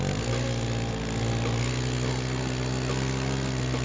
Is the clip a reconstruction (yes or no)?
no